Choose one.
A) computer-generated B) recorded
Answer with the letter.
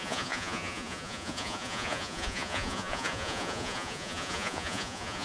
A